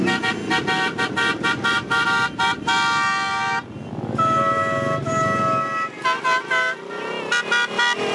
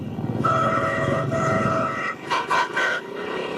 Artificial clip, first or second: second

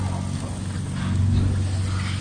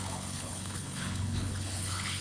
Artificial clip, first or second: second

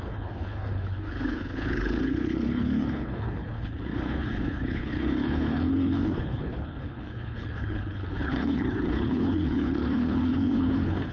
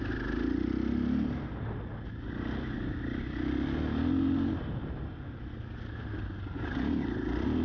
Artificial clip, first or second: first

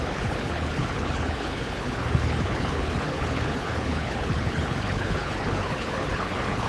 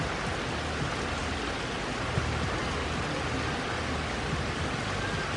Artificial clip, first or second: first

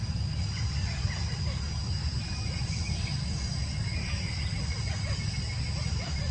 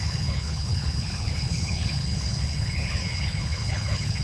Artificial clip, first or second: second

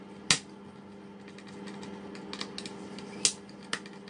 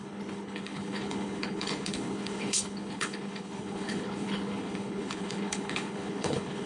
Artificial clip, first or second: second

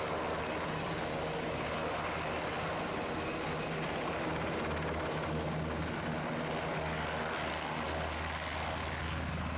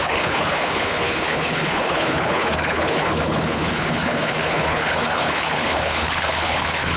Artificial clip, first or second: second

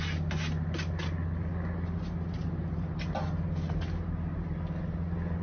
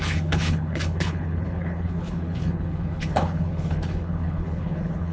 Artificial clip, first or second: second